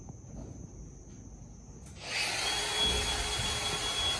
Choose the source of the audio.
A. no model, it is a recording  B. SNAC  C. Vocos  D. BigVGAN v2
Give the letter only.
A